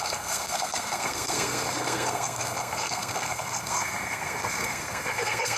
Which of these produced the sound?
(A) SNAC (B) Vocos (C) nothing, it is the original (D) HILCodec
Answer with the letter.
A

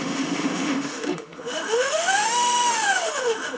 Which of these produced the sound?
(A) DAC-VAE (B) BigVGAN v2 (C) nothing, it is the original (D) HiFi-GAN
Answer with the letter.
A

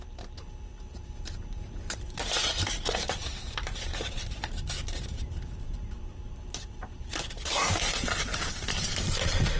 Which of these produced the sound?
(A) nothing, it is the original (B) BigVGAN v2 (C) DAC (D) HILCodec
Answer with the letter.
B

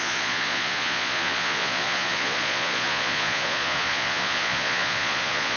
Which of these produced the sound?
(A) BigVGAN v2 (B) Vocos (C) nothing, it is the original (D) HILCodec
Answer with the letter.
B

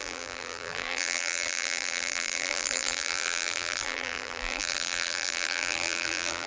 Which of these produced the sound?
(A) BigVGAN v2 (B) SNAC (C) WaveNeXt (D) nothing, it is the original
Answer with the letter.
A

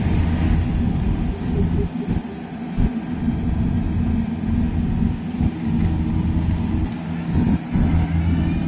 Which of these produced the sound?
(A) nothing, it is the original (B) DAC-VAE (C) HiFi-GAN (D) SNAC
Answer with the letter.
A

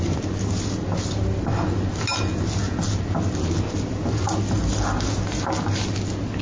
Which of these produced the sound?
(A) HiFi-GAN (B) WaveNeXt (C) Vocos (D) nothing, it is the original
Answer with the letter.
D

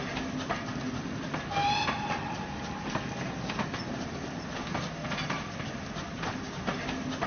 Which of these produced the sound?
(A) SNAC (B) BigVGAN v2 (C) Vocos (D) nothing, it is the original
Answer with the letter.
D